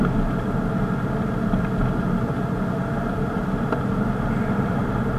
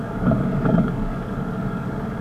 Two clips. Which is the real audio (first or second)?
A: first